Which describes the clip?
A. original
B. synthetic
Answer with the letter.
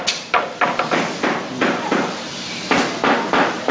A